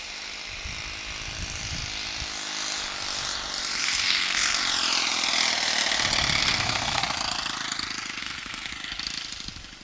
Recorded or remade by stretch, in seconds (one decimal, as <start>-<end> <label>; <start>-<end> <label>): 0.0-3.6 recorded; 3.6-4.6 remade; 4.6-6.4 recorded; 6.4-7.0 remade; 7.0-8.2 recorded; 8.2-8.7 remade; 8.7-9.8 recorded